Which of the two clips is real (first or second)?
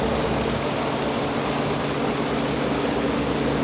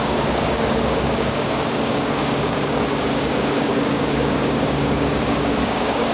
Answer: first